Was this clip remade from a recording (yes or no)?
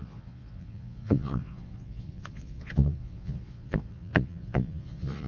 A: yes